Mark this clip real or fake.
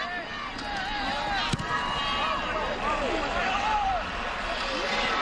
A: real